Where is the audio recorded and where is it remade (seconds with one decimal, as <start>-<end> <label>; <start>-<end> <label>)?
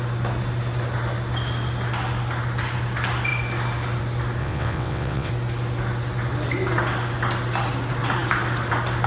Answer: 0.0-4.4 recorded; 4.4-5.3 remade; 5.3-9.1 recorded